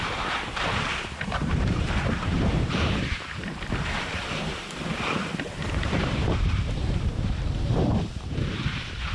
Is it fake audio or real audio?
fake